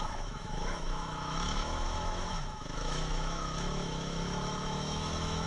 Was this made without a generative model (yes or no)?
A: no